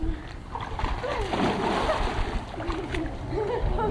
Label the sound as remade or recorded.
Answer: recorded